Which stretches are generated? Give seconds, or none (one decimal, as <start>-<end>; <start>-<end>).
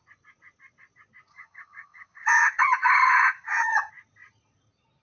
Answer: 1.3-3.9